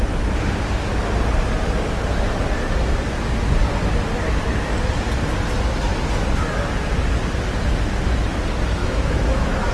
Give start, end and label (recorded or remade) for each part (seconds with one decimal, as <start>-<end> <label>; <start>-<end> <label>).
0.0-8.8 recorded; 8.8-9.7 remade